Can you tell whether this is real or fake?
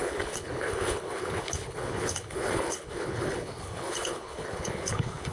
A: fake